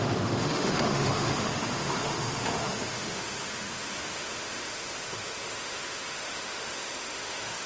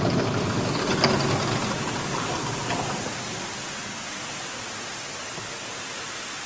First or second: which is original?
second